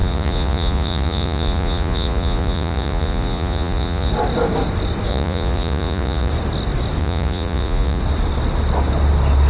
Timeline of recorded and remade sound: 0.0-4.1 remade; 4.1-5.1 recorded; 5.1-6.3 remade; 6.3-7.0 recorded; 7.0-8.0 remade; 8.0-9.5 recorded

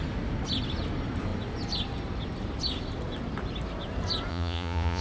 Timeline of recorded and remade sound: 0.0-4.3 recorded; 4.3-5.0 remade

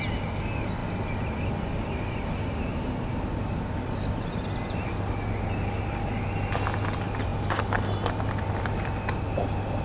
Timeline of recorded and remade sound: 0.0-9.8 recorded

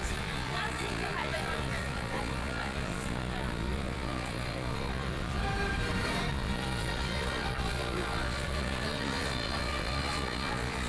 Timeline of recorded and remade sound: 0.0-5.4 remade; 5.4-6.3 recorded; 6.3-10.9 remade

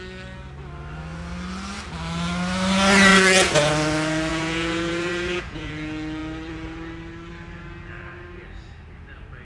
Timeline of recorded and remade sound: 0.0-3.1 recorded; 3.1-3.7 remade; 3.7-4.3 recorded; 4.3-5.7 remade; 5.7-9.4 recorded

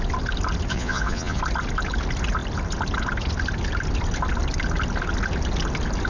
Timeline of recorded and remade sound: 0.0-0.7 recorded; 0.7-1.4 remade; 1.4-6.1 recorded

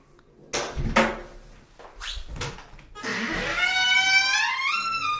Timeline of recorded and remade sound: 0.0-5.2 recorded